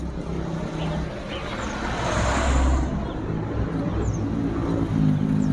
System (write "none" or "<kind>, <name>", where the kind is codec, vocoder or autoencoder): none